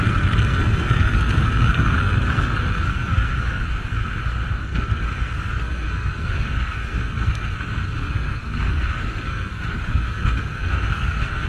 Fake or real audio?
fake